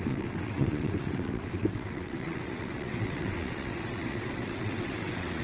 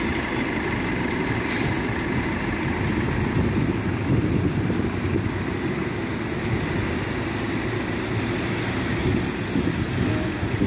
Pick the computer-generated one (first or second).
first